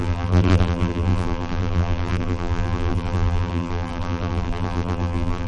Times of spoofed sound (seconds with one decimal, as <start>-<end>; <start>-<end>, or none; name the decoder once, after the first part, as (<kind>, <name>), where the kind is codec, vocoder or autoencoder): 0.0-5.5 (vocoder, BigVGAN v2)